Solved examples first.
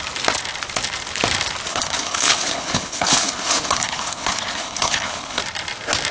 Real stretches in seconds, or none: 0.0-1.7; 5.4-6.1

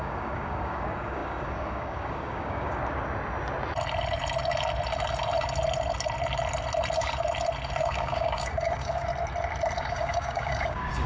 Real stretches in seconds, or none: 2.8-7.8; 9.1-9.8

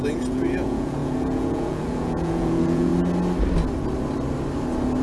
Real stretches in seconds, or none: 2.9-5.0

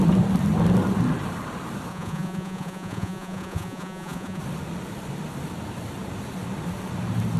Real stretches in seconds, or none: 0.0-1.9; 4.4-7.4

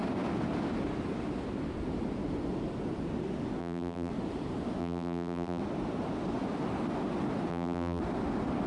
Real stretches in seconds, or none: 0.0-3.6; 4.1-4.8; 5.6-7.5; 8.0-8.7